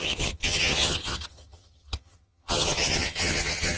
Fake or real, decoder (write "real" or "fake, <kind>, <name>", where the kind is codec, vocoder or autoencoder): fake, vocoder, HiFi-GAN